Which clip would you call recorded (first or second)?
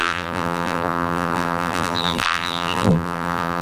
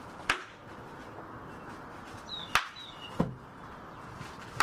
second